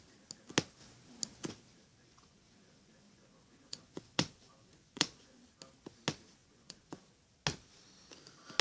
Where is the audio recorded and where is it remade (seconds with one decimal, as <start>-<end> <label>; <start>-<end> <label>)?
0.0-1.9 recorded; 1.9-5.4 remade; 5.4-6.4 recorded; 6.4-7.0 remade; 7.0-8.6 recorded